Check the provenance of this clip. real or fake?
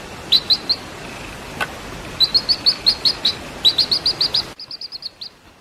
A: real